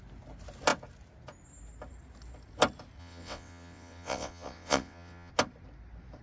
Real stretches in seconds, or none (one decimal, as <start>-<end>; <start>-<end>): 0.0-3.0; 5.3-6.2